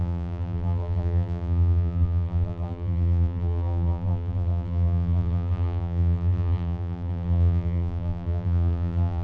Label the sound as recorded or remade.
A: remade